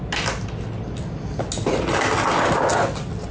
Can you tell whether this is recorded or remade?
recorded